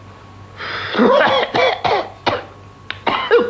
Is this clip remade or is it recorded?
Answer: recorded